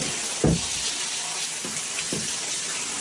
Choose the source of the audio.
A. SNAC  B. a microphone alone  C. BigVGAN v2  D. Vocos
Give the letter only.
B